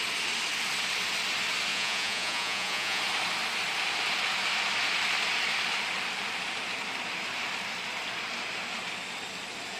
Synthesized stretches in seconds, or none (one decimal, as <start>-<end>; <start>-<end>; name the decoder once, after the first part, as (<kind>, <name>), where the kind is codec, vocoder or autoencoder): 1.7-3.0 (vocoder, Vocos)